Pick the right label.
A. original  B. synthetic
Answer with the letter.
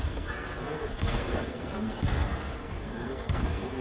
B